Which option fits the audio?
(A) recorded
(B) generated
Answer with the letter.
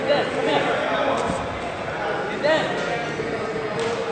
A